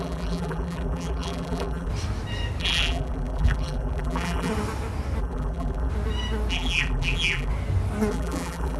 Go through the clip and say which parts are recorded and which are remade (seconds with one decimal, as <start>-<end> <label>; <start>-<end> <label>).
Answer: 0.0-1.9 remade; 1.9-2.6 recorded; 2.6-4.5 remade; 4.5-5.2 recorded; 5.2-5.9 remade; 5.9-6.5 recorded; 6.5-7.5 remade; 7.5-8.1 recorded; 8.1-8.8 remade